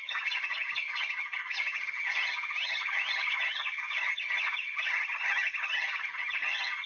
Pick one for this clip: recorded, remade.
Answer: remade